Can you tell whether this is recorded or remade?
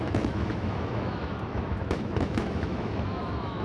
remade